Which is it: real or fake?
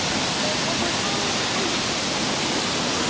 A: real